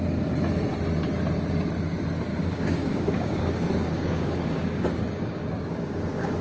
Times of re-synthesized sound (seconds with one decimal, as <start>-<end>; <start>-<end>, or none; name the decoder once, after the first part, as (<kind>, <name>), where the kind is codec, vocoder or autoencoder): 2.3-6.4 (codec, DAC)